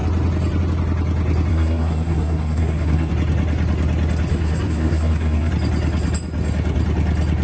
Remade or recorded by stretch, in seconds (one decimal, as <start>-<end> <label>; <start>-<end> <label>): 0.0-1.5 recorded; 1.5-3.1 remade; 3.1-4.3 recorded; 4.3-5.5 remade; 5.5-7.4 recorded